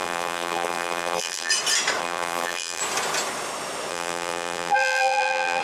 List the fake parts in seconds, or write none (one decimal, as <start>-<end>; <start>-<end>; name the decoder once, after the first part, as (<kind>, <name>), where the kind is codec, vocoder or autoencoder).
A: 0.0-1.5 (vocoder, BigVGAN v2); 2.0-2.8; 3.9-5.6